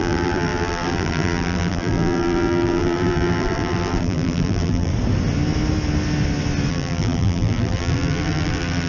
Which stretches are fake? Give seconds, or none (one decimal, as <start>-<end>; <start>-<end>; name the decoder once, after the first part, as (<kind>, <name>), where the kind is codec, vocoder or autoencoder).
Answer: 0.0-4.9 (vocoder, BigVGAN v2); 6.7-8.9